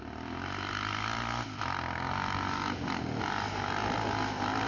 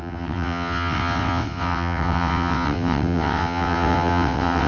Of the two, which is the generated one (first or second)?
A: second